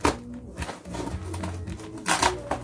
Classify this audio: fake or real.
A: real